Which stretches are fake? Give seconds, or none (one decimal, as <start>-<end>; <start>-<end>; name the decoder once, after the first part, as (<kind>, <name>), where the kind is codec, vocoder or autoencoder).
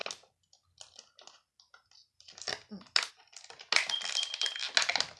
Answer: none